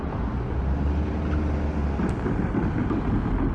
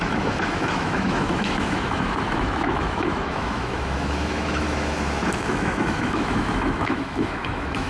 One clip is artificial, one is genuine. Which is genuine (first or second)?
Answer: first